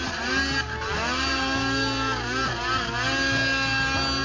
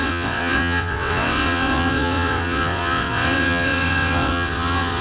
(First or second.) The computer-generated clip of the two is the second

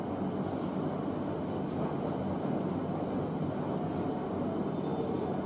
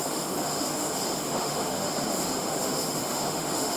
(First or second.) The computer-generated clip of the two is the second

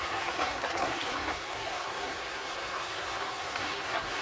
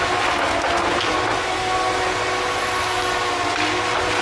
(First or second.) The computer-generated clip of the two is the first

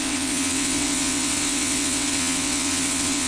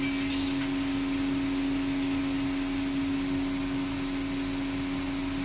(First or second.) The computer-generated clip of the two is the first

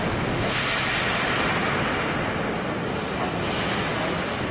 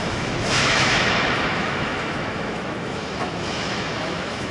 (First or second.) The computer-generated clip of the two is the second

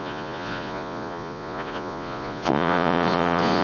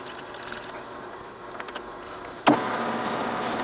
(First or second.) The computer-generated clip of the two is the first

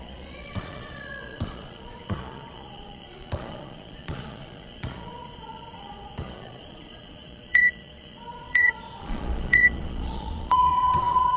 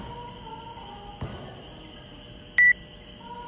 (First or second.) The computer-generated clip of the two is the first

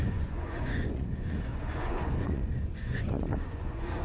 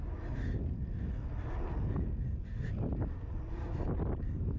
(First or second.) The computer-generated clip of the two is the first